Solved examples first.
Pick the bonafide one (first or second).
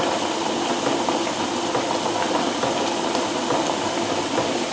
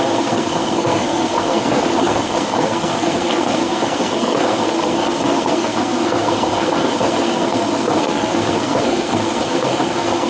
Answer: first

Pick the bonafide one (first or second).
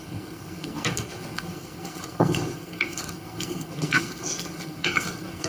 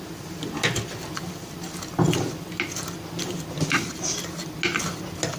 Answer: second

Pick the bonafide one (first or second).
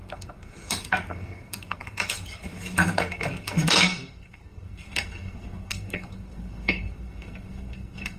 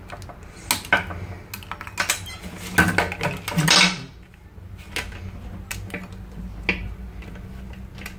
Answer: second